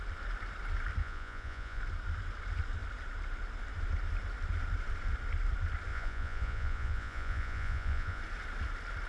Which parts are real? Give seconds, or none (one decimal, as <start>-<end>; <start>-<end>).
0.0-1.0; 1.8-5.9; 8.2-9.1